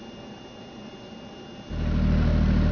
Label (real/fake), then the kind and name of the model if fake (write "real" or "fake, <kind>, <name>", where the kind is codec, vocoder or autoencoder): real